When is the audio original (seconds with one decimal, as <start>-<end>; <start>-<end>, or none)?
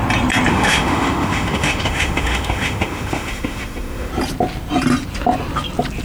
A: 0.0-0.5; 4.1-6.0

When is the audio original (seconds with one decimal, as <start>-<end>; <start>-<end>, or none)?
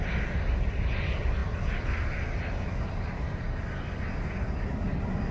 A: 0.0-5.3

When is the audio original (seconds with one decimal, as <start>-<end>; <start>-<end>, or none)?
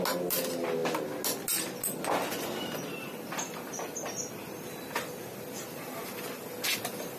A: 0.0-7.2